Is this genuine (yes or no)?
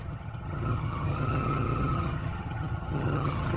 no